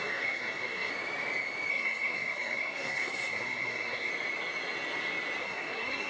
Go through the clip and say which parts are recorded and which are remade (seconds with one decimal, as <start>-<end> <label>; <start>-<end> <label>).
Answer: 0.0-0.9 remade; 0.9-1.7 recorded; 1.7-4.1 remade; 4.1-5.4 recorded; 5.4-6.1 remade